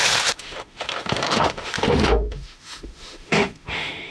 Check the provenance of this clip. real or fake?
fake